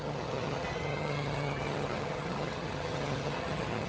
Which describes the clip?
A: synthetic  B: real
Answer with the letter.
A